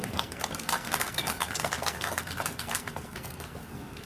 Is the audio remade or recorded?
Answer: remade